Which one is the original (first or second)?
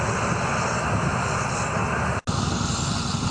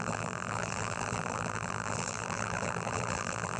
first